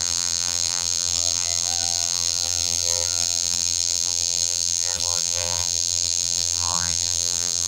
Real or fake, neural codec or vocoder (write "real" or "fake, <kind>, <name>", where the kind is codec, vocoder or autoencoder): fake, vocoder, BigVGAN v2